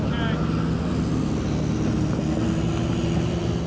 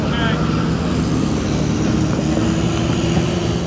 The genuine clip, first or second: first